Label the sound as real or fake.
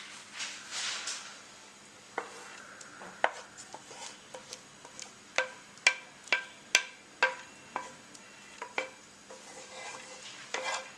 real